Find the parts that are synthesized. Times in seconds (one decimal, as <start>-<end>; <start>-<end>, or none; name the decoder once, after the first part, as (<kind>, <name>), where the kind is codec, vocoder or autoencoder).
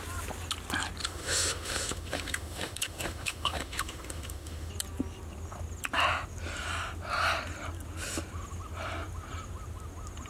1.0-4.7 (autoencoder, DAC-VAE)